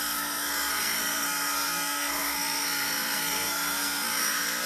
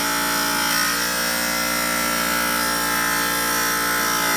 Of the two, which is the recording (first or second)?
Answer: second